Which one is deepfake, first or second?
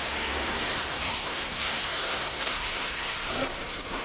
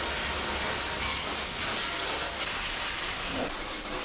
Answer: first